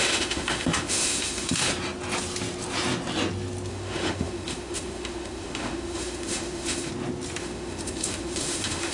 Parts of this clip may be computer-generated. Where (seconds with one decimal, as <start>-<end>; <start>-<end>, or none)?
0.0-1.7; 3.7-6.9; 7.4-8.9